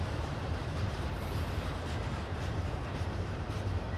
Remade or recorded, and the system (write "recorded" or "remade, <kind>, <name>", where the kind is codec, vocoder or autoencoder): remade, vocoder, BigVGAN v2